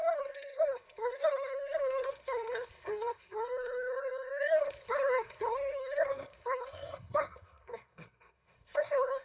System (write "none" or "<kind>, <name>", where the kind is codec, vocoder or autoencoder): codec, SNAC